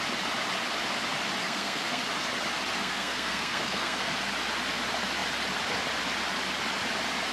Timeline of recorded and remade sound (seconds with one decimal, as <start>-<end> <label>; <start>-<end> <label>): 0.0-1.4 recorded; 1.4-2.0 remade; 2.0-2.8 recorded; 2.8-4.1 remade; 4.1-7.3 recorded